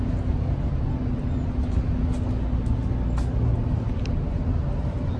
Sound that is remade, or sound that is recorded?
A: recorded